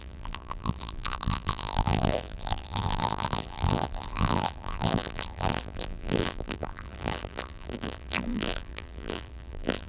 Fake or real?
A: fake